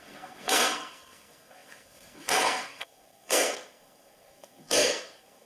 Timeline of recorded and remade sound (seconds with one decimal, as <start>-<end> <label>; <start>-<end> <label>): 0.0-5.5 remade